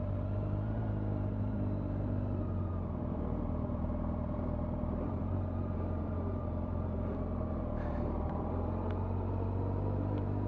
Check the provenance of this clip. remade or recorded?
remade